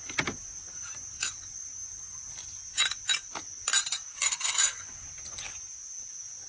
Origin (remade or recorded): recorded